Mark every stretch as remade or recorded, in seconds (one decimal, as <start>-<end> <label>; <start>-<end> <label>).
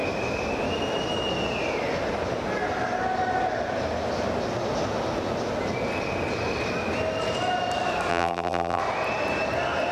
0.0-8.1 recorded; 8.1-8.8 remade; 8.8-9.9 recorded